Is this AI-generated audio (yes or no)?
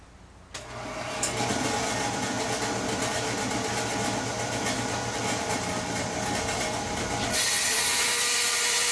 no